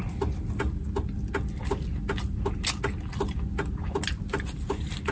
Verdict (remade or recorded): recorded